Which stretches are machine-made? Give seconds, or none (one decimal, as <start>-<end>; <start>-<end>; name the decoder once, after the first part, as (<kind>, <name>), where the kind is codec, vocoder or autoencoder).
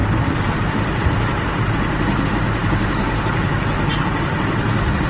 0.0-0.9 (vocoder, BigVGAN v2)